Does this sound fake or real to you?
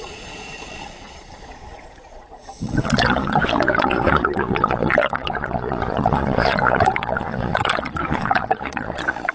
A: fake